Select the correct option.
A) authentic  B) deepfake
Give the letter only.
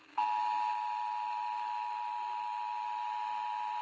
A